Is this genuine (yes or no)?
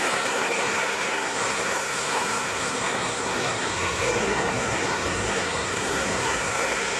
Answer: no